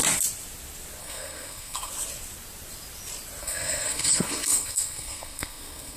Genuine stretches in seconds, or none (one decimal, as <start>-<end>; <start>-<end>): 0.0-1.0; 1.9-3.4